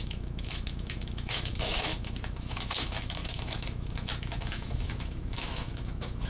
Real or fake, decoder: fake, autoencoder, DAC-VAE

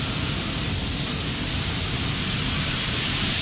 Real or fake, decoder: real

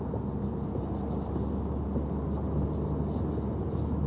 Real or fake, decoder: real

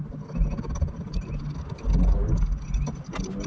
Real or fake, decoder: real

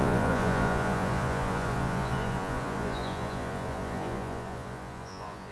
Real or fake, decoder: fake, vocoder, Vocos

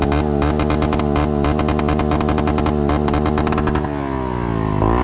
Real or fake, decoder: real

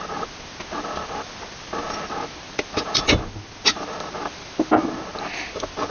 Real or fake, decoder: real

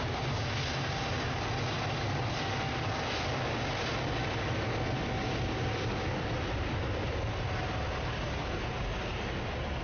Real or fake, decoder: real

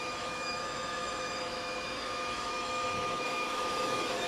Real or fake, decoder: fake, autoencoder, DAC-VAE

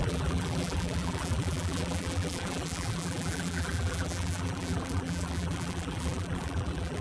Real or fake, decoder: fake, vocoder, BigVGAN v2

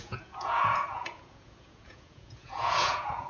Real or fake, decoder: fake, vocoder, Vocos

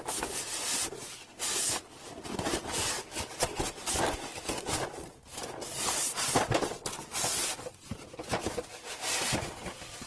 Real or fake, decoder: real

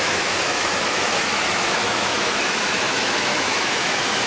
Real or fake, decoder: fake, autoencoder, DAC-VAE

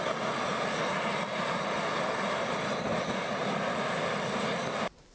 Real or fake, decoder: real